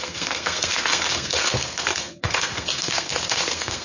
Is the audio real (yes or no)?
no